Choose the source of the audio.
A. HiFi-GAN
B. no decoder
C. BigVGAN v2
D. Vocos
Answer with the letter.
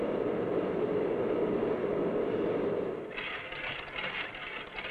B